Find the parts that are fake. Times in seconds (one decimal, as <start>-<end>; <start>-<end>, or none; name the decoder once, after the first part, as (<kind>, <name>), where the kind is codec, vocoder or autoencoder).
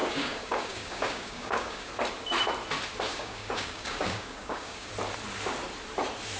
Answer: 0.0-1.9 (codec, DAC); 3.1-4.9